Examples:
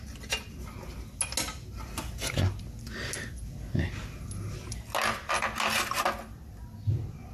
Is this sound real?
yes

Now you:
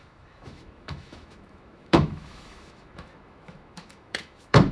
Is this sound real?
no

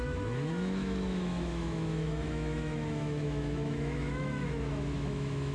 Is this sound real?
no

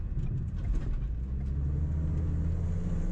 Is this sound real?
yes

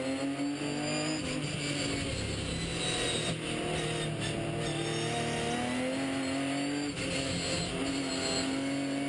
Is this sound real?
yes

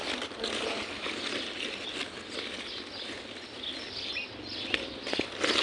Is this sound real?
yes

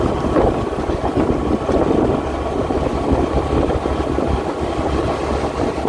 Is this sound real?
yes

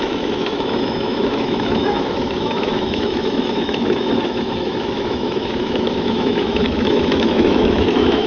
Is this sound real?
no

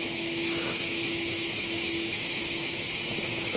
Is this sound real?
no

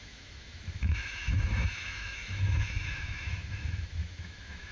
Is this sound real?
no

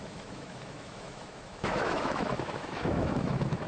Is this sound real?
no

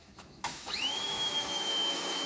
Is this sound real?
no